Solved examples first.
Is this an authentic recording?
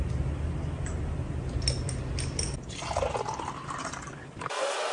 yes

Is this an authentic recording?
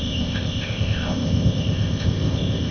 no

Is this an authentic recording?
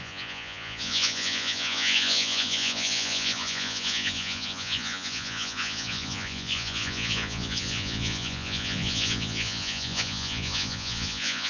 no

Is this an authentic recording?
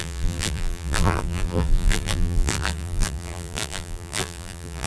no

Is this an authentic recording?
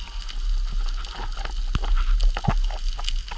yes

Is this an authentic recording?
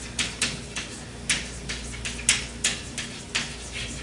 yes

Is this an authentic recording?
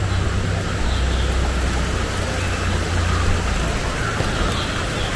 yes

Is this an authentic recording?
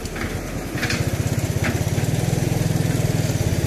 yes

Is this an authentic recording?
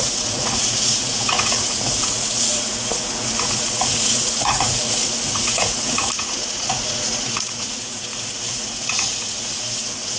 no